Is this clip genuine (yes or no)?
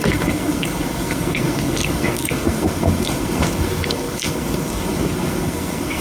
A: no